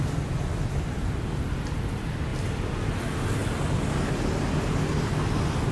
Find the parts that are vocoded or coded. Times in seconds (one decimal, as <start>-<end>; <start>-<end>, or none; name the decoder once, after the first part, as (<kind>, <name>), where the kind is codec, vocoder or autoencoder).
none